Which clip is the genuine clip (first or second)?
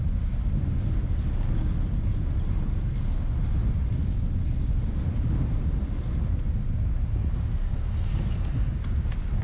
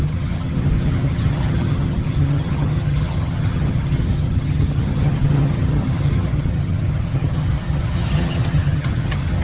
first